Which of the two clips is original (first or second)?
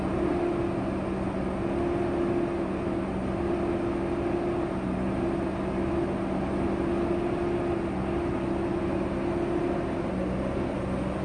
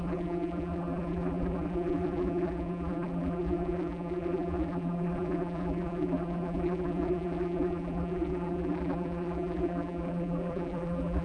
first